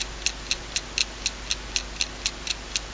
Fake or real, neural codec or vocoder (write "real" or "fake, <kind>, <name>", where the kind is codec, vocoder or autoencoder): real